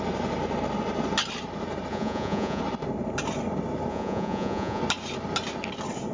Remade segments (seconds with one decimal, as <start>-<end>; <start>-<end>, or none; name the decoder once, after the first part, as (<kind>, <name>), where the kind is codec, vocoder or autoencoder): 1.9-2.6 (vocoder, Vocos); 3.9-4.8